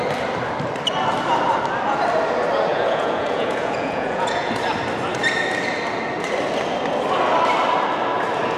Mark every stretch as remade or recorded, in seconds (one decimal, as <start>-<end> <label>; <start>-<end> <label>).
0.0-2.7 recorded; 2.7-4.5 remade; 4.5-8.6 recorded